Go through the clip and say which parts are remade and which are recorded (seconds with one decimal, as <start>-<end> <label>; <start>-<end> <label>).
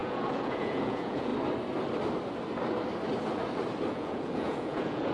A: 0.0-1.3 remade; 1.3-3.9 recorded; 3.9-5.1 remade